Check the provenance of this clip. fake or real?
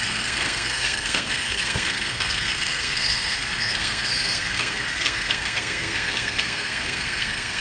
fake